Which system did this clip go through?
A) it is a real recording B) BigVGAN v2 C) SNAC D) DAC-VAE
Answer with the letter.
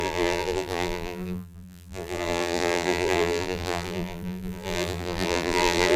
B